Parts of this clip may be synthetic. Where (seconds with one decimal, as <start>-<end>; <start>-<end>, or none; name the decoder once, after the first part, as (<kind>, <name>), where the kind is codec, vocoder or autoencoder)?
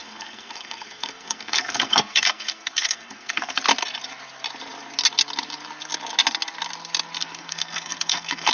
0.0-3.6 (codec, SNAC); 7.2-8.5